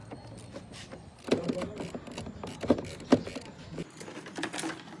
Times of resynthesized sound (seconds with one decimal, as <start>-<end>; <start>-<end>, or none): none

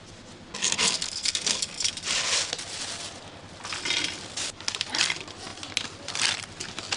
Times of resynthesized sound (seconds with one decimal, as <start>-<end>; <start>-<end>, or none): 0.6-1.9